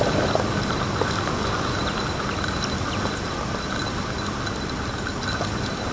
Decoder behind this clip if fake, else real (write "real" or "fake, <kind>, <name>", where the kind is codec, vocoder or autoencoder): real